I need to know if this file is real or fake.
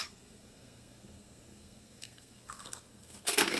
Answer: fake